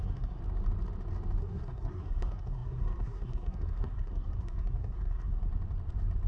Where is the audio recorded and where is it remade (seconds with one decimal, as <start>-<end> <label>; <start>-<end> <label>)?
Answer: 0.0-0.4 remade; 0.4-1.4 recorded; 1.4-5.4 remade; 5.4-6.3 recorded